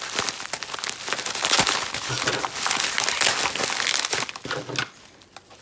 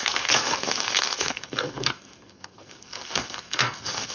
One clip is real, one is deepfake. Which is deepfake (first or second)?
second